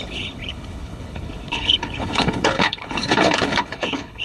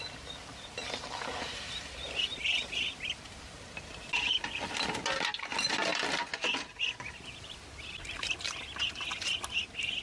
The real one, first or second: second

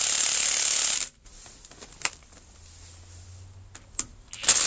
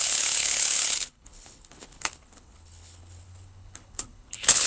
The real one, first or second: first